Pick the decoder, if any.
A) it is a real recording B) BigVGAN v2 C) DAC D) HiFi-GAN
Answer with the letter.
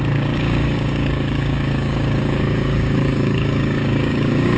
C